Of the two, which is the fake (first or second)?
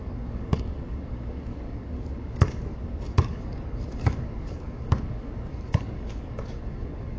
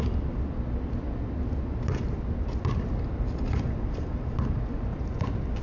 first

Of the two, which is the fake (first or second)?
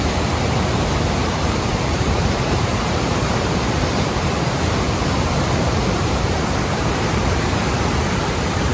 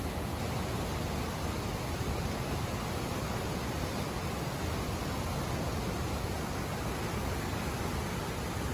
first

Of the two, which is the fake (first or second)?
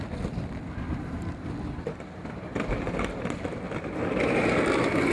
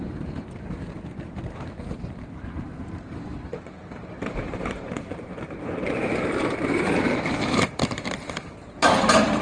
second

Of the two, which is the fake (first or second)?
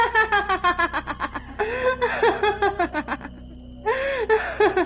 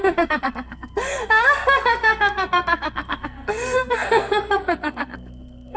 second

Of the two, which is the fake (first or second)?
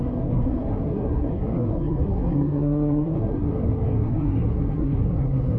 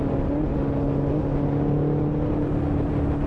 first